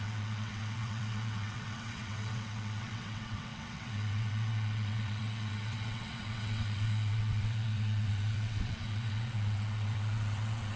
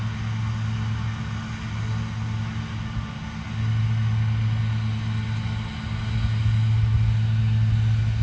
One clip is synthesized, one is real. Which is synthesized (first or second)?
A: first